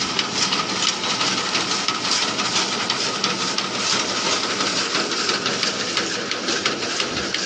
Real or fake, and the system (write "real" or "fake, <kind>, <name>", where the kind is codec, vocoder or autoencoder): real